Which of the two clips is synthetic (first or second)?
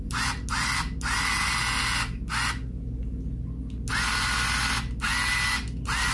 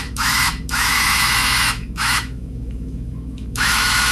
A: second